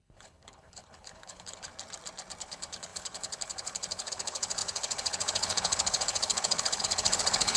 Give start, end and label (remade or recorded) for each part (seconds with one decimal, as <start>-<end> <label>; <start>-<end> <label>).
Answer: 0.0-1.7 remade; 1.7-2.4 recorded; 2.4-7.6 remade